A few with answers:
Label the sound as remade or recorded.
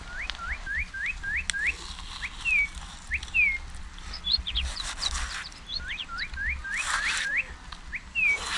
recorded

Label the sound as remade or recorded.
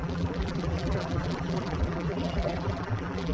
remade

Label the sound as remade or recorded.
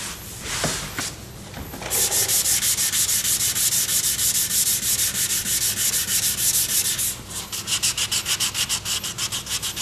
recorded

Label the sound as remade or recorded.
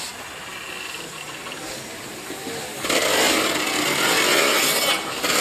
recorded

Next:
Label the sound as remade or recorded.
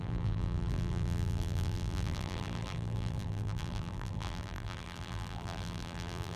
remade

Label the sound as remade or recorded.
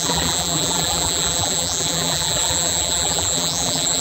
remade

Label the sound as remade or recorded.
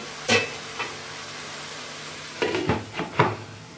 recorded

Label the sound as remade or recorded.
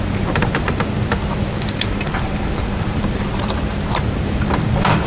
remade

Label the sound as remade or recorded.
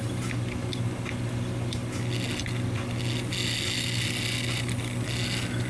recorded